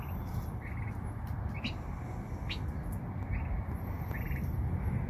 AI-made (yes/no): no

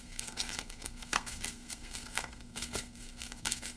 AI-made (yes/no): yes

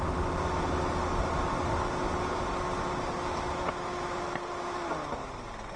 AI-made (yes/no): no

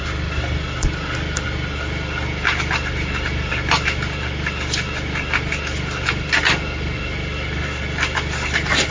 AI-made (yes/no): no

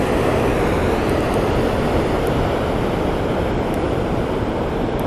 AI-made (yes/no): no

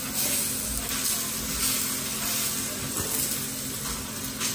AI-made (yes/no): no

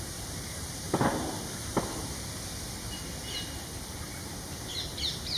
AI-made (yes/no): no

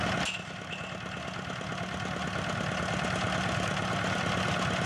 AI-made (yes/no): no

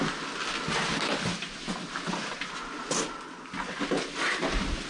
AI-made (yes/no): no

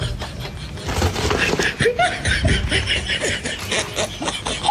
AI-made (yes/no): no